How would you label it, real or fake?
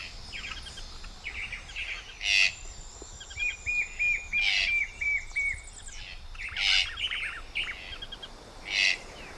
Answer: real